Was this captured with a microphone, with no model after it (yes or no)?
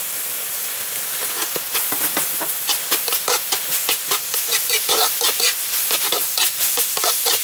yes